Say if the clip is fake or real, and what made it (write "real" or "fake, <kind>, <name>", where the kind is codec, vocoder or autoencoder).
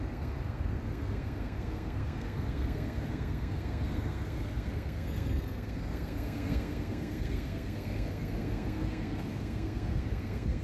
fake, codec, SNAC